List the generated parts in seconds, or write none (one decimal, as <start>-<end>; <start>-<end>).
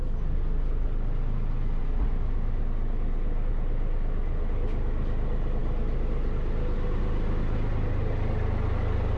none